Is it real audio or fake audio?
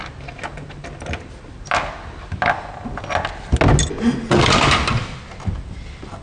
real